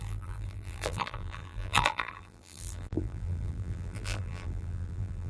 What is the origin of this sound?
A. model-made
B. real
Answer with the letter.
A